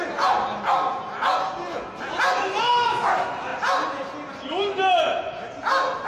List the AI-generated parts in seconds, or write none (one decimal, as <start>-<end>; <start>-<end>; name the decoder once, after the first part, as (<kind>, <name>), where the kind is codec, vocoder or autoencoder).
none